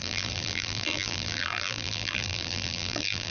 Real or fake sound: fake